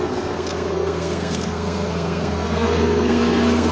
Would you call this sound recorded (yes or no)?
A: no